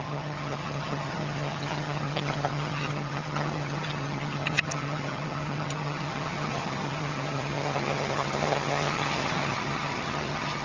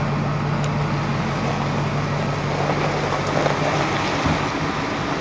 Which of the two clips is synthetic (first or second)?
first